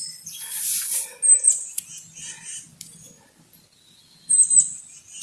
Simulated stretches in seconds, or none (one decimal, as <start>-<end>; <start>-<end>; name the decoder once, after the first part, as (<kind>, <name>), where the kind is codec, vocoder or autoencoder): none